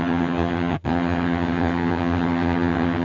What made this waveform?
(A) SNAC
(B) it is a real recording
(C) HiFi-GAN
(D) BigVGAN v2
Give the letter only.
C